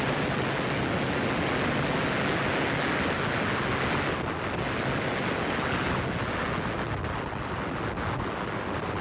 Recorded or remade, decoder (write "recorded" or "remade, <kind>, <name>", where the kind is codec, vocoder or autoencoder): recorded